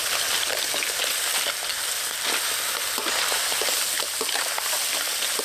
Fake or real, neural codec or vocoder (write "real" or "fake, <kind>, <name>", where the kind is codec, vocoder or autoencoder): real